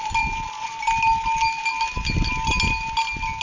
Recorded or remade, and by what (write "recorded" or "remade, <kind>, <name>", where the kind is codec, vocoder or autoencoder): recorded